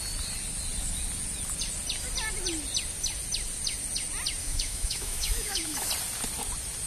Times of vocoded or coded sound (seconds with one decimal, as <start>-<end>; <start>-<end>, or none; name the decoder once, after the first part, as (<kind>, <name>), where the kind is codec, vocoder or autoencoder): 4.4-5.9 (autoencoder, DAC-VAE)